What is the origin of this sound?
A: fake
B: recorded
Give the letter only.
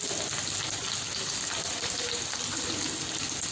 B